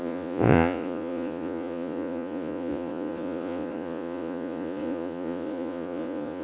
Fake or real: fake